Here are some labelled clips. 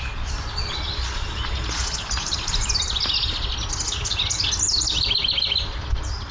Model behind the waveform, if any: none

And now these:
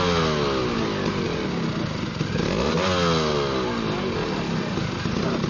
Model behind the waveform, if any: none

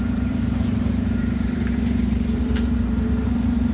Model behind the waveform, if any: vocoder, BigVGAN v2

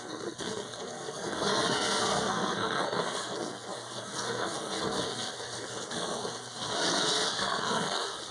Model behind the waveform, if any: codec, SNAC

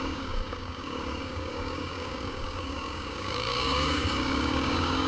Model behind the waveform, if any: codec, DAC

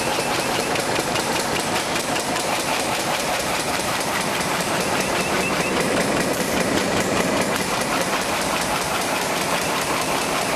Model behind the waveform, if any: vocoder, BigVGAN v2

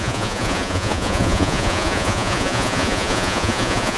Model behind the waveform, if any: vocoder, Vocos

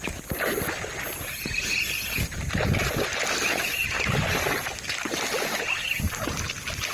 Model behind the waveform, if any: none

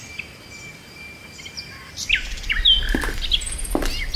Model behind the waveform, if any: none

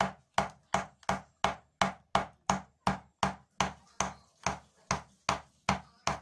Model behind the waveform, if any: none